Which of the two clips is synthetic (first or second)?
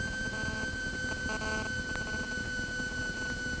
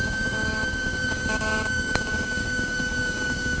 second